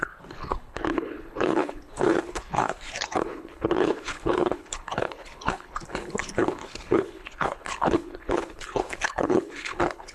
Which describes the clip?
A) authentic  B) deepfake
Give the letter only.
B